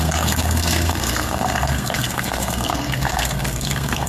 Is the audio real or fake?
fake